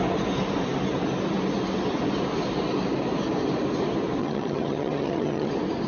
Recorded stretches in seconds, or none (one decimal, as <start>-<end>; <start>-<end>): 0.0-4.2; 5.5-5.9